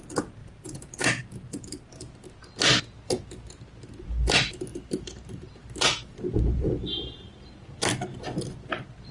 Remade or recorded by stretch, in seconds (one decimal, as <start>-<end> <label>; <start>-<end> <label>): 0.0-0.4 recorded; 0.4-1.1 remade; 1.1-4.7 recorded; 4.7-7.3 remade; 7.3-9.1 recorded